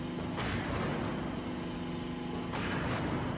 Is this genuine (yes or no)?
yes